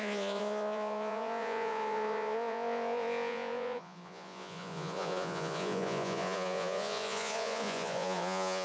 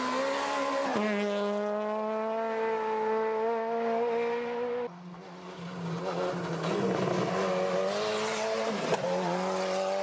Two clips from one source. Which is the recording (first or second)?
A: second